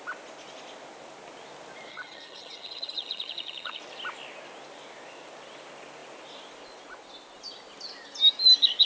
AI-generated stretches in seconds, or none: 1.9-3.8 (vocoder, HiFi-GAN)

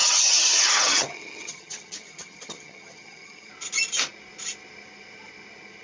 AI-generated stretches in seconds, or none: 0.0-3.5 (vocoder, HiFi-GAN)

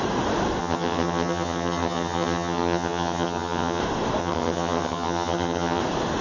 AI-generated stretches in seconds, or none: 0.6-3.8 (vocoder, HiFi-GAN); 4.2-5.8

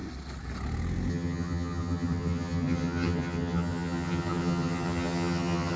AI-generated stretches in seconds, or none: 1.1-5.8 (vocoder, HiFi-GAN)